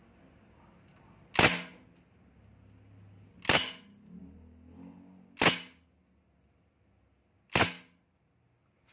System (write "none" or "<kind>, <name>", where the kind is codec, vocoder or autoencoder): none